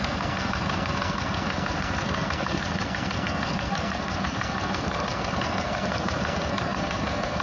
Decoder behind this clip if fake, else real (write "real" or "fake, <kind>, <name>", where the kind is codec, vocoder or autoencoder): fake, codec, SNAC